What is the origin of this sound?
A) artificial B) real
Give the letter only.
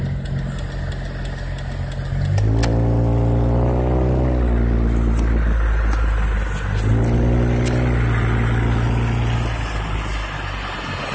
B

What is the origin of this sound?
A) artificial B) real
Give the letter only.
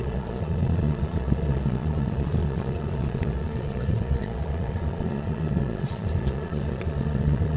A